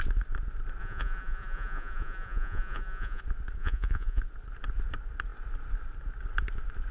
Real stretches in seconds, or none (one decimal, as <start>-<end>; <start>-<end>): 0.0-0.8; 3.2-3.6; 4.2-6.9